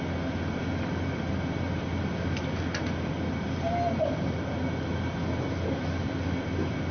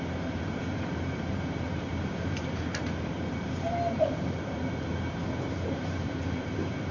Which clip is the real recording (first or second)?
first